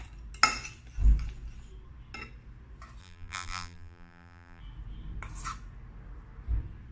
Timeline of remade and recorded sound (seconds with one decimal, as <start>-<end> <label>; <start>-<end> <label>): 0.0-3.0 recorded; 3.0-4.6 remade; 4.6-6.9 recorded